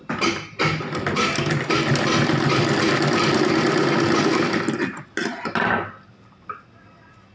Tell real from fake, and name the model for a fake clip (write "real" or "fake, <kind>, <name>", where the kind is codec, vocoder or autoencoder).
real